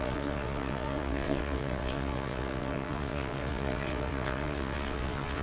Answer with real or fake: fake